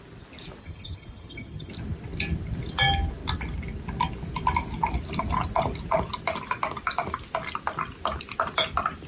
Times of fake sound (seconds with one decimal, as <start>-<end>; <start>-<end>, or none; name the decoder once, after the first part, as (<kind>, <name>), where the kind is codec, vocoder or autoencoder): 0.6-1.7 (vocoder, HiFi-GAN)